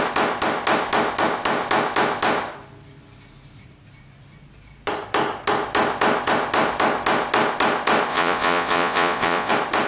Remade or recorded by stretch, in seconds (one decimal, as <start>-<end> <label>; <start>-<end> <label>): 0.0-8.1 recorded; 8.1-9.5 remade; 9.5-9.9 recorded